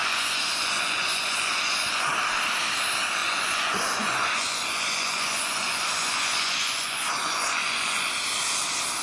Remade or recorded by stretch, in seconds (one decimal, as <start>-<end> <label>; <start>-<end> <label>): 0.0-2.1 remade; 2.1-3.2 recorded; 3.2-8.1 remade; 8.1-9.0 recorded